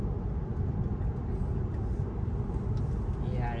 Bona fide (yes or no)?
yes